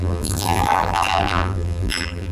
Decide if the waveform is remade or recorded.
remade